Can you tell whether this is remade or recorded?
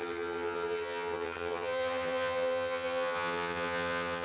remade